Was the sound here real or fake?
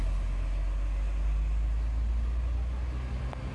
real